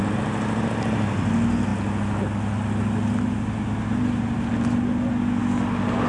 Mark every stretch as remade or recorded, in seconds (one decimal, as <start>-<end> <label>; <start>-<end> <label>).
0.0-6.1 recorded